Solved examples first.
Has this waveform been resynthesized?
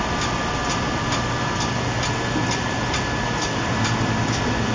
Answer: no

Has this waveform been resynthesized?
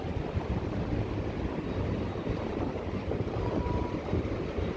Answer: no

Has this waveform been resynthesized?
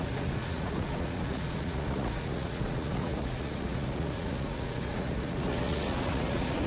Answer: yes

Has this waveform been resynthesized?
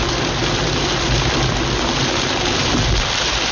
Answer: no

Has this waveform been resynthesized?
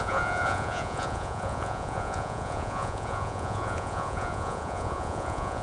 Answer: yes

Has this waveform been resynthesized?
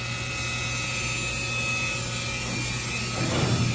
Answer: no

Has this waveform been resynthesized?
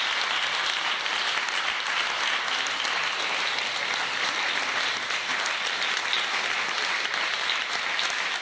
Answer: no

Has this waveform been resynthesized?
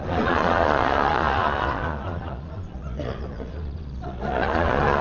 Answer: yes